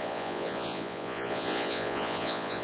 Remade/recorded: remade